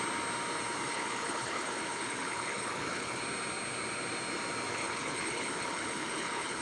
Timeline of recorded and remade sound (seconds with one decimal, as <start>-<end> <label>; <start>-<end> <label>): 0.0-0.9 recorded; 0.9-3.2 remade; 3.2-4.7 recorded; 4.7-6.6 remade